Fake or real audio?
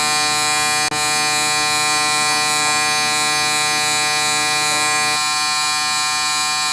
real